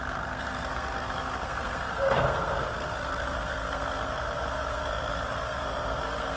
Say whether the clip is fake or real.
fake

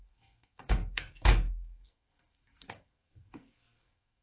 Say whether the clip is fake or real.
fake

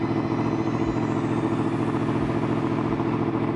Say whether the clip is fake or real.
real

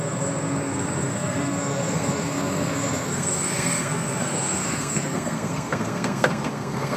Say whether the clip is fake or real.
fake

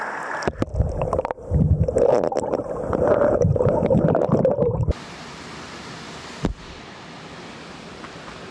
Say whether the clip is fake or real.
real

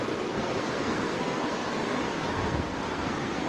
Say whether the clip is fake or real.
fake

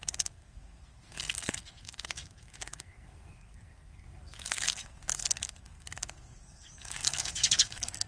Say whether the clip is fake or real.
fake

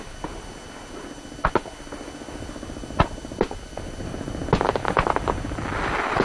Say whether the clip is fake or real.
real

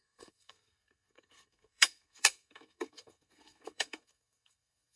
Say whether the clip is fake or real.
fake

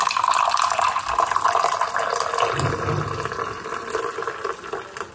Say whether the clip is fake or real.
real